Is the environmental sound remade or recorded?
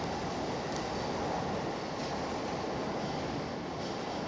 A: recorded